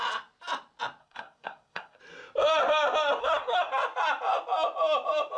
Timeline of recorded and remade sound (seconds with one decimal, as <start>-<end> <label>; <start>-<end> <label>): 0.0-1.0 recorded; 1.0-2.0 remade; 2.0-3.2 recorded; 3.2-3.7 remade; 3.7-5.4 recorded